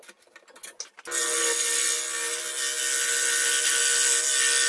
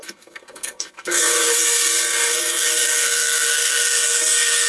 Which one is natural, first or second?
first